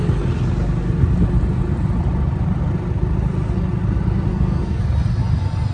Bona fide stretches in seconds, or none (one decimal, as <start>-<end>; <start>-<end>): 0.0-4.3; 4.8-5.7

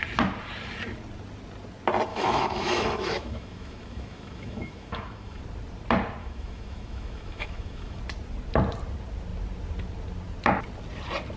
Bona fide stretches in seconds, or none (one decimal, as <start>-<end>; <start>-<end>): 0.0-2.1; 5.4-6.2; 8.0-11.4

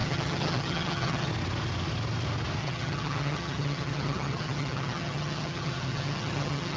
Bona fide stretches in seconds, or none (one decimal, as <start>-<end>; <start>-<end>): 1.3-2.6

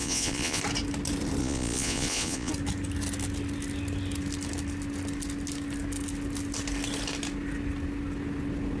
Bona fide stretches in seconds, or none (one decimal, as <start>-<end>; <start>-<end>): 0.6-1.4; 2.5-8.8